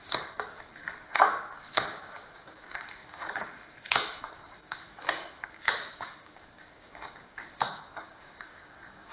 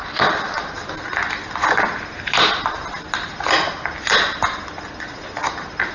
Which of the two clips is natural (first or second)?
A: second